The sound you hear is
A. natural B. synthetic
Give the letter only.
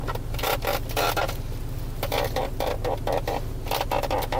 A